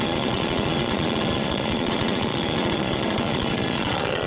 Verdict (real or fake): fake